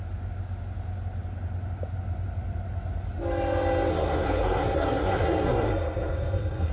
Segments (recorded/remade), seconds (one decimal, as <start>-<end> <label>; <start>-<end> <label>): 0.0-3.9 recorded; 3.9-6.7 remade